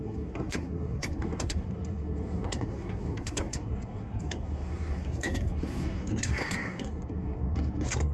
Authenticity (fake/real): fake